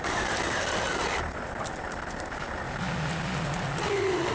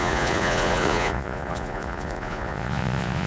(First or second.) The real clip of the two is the first